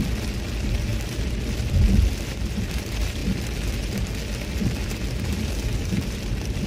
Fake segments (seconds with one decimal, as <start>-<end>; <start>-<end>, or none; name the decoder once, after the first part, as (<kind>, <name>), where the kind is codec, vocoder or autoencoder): 0.0-3.2 (vocoder, BigVGAN v2); 5.3-6.7